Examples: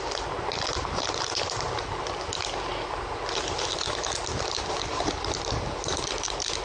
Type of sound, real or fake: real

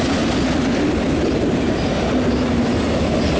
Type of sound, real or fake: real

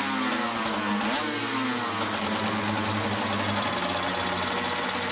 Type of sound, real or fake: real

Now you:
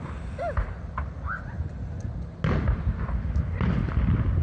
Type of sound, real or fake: real